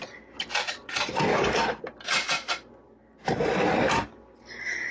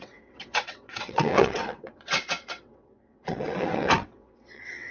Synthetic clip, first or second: second